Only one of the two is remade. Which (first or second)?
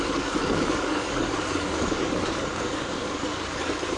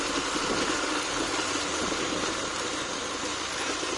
first